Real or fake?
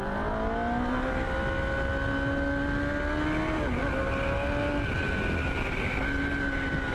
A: real